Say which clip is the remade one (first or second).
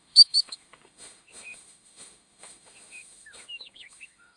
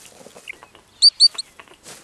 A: first